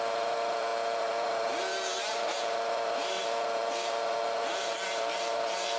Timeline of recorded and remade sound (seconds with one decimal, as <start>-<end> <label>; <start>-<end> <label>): 0.0-5.8 remade